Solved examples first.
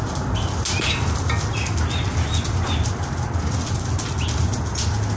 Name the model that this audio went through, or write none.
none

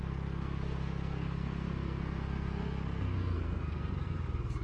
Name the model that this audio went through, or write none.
codec, SNAC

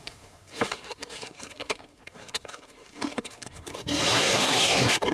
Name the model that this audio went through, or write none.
codec, SNAC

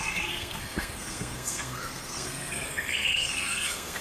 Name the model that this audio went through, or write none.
codec, SNAC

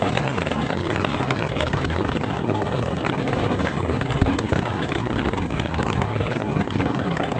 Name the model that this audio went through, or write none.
codec, SNAC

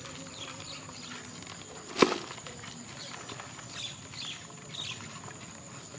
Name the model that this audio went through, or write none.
none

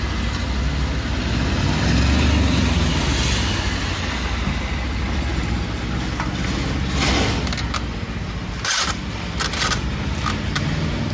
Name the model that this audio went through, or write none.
none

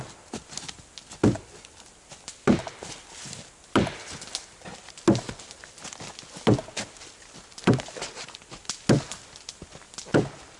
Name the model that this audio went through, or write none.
none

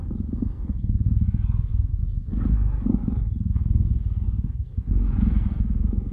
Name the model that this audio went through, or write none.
codec, SNAC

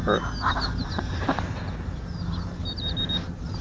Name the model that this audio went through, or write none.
none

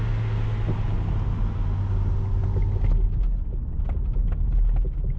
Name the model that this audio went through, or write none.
none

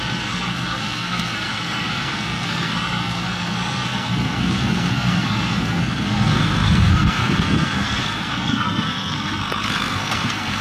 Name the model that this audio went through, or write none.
codec, SNAC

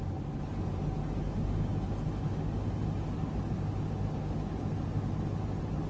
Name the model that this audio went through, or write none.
none